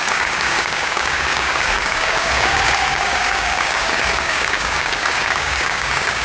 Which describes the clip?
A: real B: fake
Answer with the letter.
B